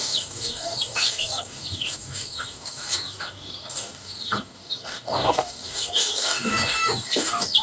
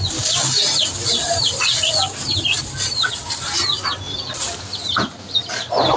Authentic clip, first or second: second